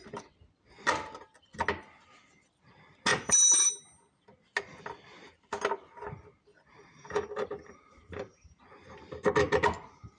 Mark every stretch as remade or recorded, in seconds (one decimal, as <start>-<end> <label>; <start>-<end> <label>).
0.0-3.1 recorded; 3.1-3.7 remade; 3.7-6.5 recorded; 6.5-8.6 remade; 8.6-10.2 recorded